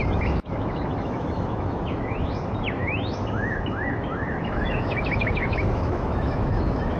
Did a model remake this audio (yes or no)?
yes